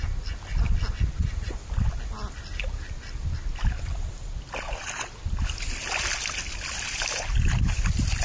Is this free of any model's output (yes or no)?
yes